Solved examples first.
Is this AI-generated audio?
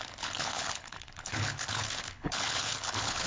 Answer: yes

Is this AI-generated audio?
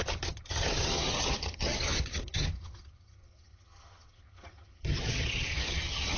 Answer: yes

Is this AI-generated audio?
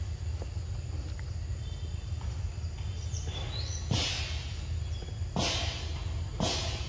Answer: no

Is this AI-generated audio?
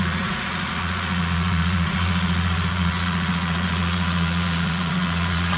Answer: yes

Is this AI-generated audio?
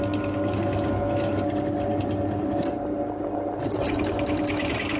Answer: no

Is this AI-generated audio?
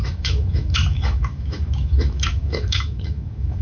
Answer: yes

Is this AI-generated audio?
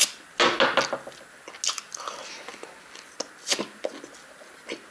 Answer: no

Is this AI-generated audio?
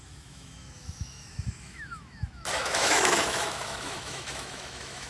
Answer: yes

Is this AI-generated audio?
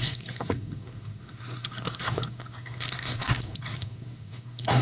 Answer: yes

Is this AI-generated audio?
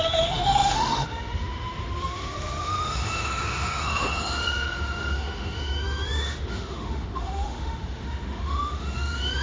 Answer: yes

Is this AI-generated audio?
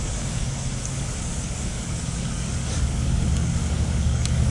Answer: yes